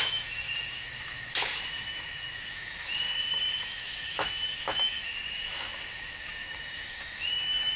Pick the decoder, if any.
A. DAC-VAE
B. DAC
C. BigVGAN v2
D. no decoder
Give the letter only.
A